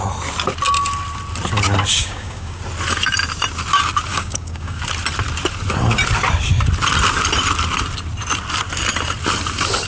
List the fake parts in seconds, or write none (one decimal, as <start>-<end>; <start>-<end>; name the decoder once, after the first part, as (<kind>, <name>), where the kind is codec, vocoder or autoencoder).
1.9-2.6 (codec, DAC); 4.1-4.8